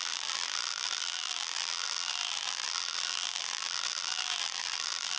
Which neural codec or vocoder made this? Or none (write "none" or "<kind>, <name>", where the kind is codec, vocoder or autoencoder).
vocoder, BigVGAN v2